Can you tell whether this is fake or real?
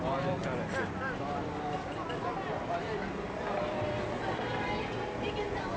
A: real